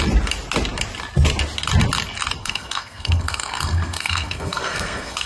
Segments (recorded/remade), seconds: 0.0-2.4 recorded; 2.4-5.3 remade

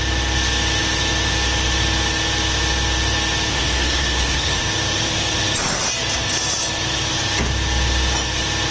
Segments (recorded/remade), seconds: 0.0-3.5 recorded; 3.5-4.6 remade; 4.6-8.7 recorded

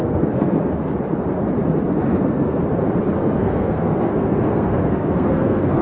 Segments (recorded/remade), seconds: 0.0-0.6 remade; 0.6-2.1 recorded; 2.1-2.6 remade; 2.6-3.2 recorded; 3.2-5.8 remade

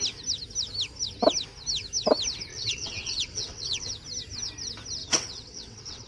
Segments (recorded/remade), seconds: 0.0-2.5 recorded; 2.5-3.9 remade; 3.9-5.0 recorded; 5.0-6.1 remade